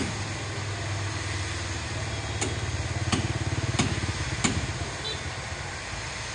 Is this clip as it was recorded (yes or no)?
yes